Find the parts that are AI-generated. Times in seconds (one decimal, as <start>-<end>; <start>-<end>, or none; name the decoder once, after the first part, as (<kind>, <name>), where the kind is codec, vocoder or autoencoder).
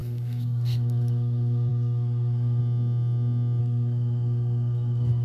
0.0-2.6 (codec, SNAC); 3.6-5.2